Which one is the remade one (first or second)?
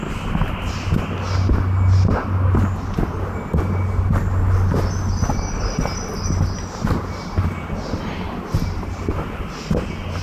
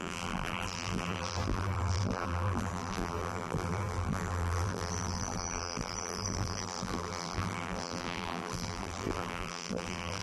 second